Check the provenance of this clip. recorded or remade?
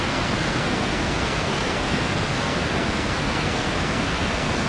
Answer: remade